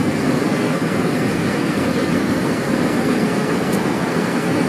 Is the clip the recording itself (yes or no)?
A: no